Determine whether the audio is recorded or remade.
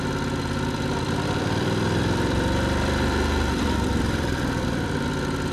remade